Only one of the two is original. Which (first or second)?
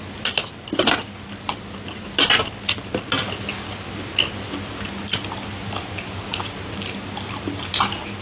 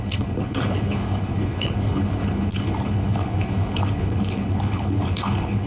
first